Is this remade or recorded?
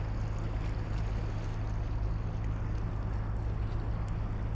recorded